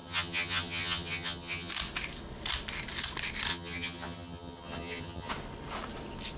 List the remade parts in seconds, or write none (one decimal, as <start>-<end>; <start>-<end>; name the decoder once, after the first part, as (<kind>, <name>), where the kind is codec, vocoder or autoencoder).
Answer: 0.0-1.7 (vocoder, HiFi-GAN); 3.5-5.3